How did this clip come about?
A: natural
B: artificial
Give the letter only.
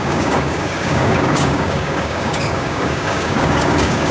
B